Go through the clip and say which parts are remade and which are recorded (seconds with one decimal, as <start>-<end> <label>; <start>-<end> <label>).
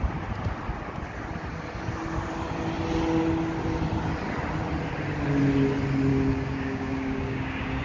0.0-6.1 recorded; 6.1-7.8 remade